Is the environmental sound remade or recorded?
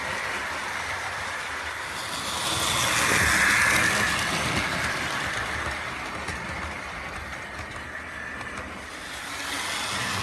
recorded